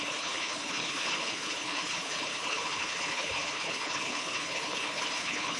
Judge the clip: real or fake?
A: fake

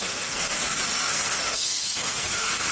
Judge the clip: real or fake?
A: fake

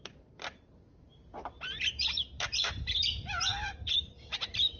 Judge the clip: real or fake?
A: fake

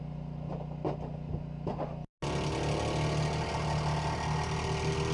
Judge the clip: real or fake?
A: real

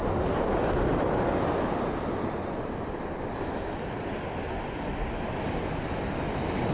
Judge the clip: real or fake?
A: real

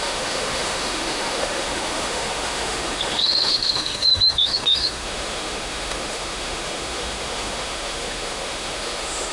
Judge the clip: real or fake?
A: fake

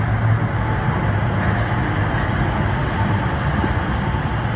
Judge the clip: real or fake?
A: real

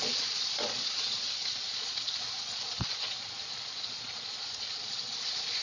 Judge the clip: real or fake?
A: fake